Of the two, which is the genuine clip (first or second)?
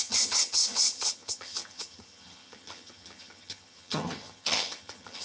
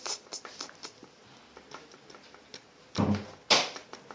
second